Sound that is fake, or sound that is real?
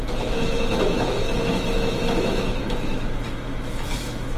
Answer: fake